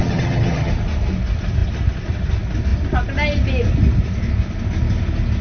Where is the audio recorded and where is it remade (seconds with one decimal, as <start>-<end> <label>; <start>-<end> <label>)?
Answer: 0.0-0.7 remade; 0.7-5.4 recorded